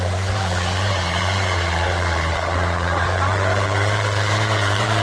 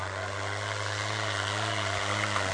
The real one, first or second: second